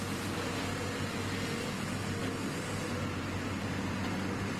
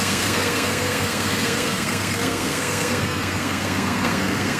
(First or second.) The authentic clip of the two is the first